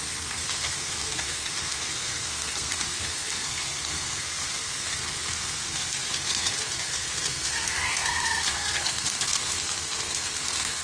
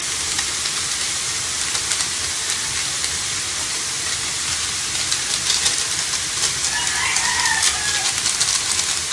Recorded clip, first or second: second